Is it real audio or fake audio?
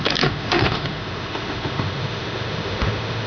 fake